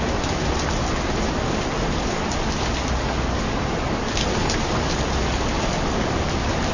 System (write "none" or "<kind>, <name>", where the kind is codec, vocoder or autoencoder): none